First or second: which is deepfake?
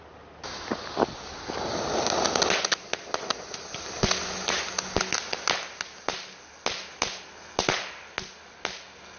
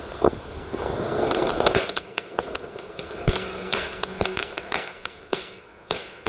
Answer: second